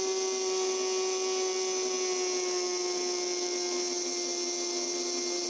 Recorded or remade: recorded